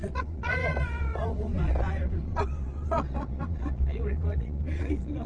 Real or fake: fake